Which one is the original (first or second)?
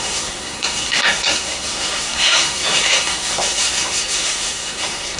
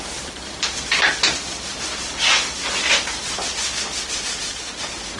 second